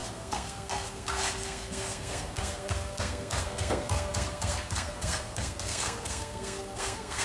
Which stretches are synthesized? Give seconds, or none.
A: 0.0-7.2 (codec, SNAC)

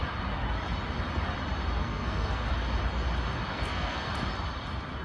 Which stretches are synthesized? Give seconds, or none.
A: 1.8-2.5 (codec, SNAC); 3.5-4.1

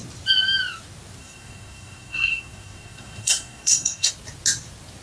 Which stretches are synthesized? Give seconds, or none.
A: 1.2-4.1 (codec, SNAC)

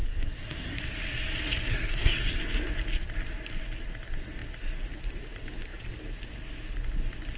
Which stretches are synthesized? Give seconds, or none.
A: 0.0-0.8 (codec, SNAC); 1.7-2.4

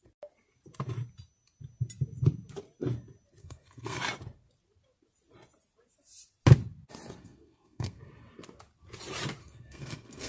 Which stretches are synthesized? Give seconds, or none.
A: 3.4-4.0 (codec, SNAC); 7.2-8.0; 9.4-10.3